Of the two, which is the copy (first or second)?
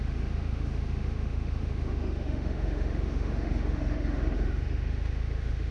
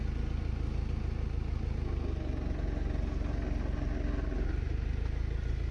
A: first